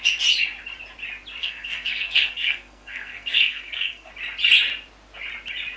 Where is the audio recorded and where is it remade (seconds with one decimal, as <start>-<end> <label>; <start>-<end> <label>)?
0.0-1.4 recorded; 1.4-4.1 remade; 4.1-5.8 recorded